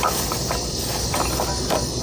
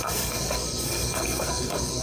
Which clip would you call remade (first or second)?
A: second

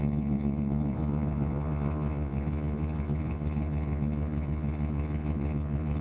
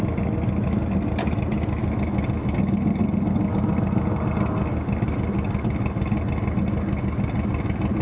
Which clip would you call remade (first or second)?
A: first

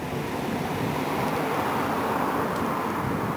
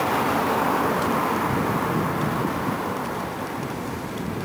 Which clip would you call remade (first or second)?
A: second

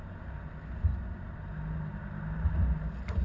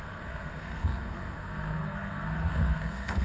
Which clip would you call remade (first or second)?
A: second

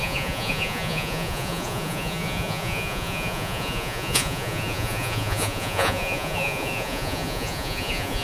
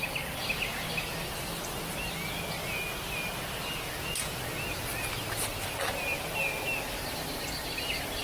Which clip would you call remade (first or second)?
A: first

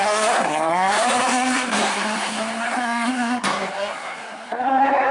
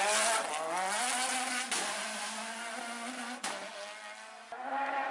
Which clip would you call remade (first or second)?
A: first